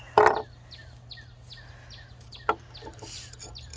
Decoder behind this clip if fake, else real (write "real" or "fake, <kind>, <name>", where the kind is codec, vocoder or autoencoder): real